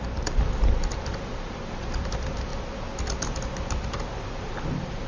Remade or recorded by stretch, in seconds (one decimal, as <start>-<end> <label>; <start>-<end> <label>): 0.0-5.1 recorded